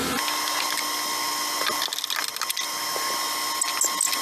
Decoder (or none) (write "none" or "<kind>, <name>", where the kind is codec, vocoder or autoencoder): none